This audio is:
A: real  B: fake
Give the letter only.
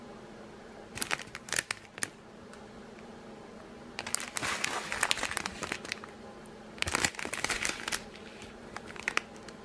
A